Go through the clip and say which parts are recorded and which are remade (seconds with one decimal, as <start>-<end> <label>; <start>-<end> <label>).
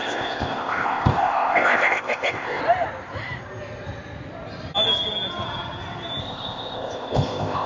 0.0-2.6 remade; 2.6-6.2 recorded; 6.2-7.7 remade